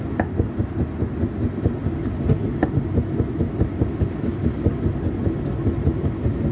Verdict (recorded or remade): recorded